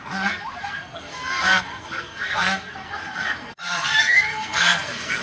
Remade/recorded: remade